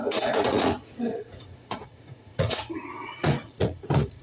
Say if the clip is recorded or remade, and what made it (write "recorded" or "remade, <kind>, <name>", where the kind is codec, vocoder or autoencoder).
remade, vocoder, Vocos